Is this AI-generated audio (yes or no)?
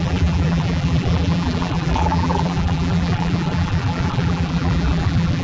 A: yes